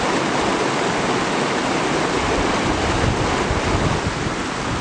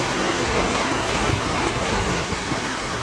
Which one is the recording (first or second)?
first